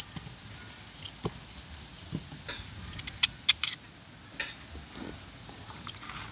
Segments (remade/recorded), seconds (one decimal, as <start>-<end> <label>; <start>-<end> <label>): 0.0-6.3 recorded